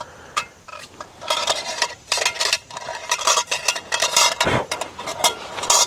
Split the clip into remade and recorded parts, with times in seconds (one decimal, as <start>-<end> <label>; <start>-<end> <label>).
0.0-0.7 recorded; 0.7-2.2 remade; 2.2-2.9 recorded; 2.9-3.7 remade; 3.7-5.9 recorded